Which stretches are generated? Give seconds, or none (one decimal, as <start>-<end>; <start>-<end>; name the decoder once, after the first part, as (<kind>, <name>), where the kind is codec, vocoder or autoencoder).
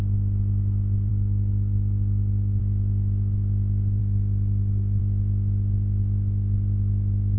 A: 0.0-1.1 (vocoder, Vocos); 2.6-7.4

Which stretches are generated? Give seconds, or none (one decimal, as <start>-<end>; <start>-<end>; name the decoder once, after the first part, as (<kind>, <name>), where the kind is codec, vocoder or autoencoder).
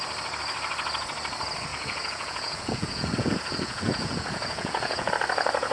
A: 1.7-5.1 (vocoder, Vocos)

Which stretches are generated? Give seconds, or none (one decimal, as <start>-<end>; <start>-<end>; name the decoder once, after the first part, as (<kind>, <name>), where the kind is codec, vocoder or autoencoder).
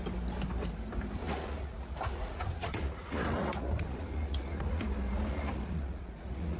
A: 1.2-4.8 (vocoder, Vocos); 5.3-6.6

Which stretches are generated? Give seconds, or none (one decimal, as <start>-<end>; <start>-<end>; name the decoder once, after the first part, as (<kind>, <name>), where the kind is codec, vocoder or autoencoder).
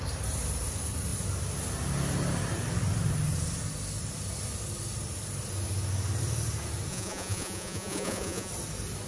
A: 6.9-8.5 (vocoder, Vocos)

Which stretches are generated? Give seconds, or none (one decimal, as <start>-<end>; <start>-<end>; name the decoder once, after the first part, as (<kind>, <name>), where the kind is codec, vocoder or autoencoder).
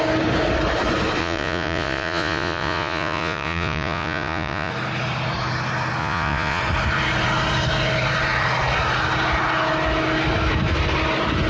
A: 1.2-4.7 (vocoder, Vocos); 6.0-6.6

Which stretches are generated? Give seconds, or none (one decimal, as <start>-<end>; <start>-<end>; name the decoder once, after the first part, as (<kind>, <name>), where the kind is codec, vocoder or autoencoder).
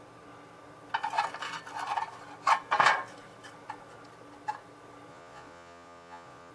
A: 5.1-6.5 (vocoder, Vocos)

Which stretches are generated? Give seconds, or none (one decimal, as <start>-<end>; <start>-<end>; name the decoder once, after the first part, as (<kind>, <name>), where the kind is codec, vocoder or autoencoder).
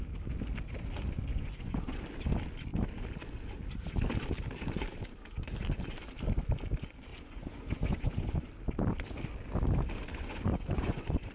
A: 1.3-2.0 (vocoder, Vocos); 7.1-8.5; 10.1-11.3